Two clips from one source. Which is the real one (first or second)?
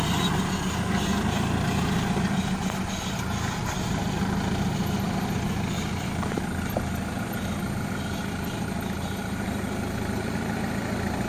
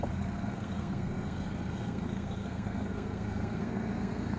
first